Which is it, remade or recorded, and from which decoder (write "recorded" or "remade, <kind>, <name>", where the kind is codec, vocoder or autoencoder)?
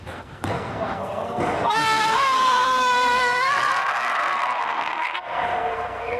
remade, codec, SNAC